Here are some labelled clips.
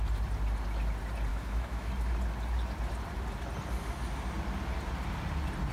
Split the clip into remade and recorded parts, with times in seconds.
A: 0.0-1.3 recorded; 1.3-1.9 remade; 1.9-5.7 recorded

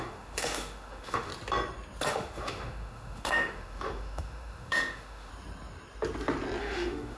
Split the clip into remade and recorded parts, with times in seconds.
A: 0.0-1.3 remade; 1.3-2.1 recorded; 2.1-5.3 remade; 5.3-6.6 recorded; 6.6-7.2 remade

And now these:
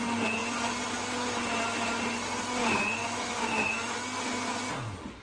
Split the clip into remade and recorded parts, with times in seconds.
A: 0.0-3.0 recorded; 3.0-4.0 remade; 4.0-5.2 recorded

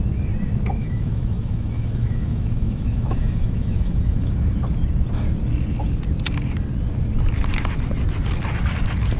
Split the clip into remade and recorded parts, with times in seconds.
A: 0.0-0.8 recorded; 0.8-4.3 remade; 4.3-9.2 recorded

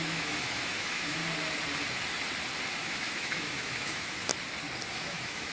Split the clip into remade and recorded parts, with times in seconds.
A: 0.0-1.2 remade; 1.2-2.7 recorded; 2.7-4.3 remade; 4.3-4.9 recorded; 4.9-5.5 remade

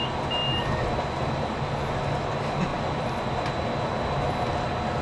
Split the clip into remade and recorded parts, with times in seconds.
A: 0.0-5.0 recorded

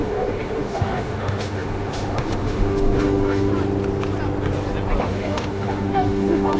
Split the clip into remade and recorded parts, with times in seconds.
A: 0.0-3.5 remade; 3.5-5.0 recorded; 5.0-6.6 remade